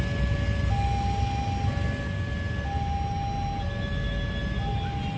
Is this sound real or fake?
real